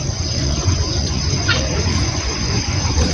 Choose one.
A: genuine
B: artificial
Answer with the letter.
B